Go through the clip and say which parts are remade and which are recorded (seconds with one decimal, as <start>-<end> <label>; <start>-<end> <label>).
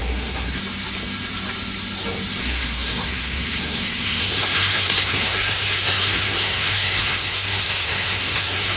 0.0-0.6 remade; 0.6-2.4 recorded; 2.4-8.8 remade